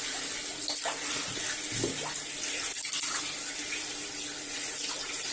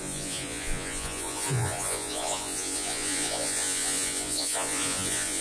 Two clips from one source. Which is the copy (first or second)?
second